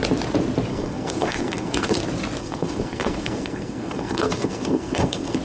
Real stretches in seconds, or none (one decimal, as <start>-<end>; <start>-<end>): 0.0-0.7; 2.0-2.4

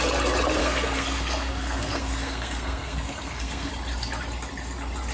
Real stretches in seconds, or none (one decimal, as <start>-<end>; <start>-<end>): 0.0-0.6; 3.7-5.1

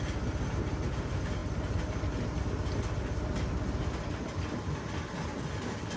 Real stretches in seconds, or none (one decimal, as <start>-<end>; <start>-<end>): 0.0-6.0